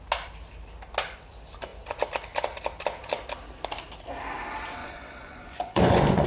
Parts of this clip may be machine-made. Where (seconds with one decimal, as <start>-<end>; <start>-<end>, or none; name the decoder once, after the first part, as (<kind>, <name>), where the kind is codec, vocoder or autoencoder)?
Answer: 4.8-6.3 (vocoder, Vocos)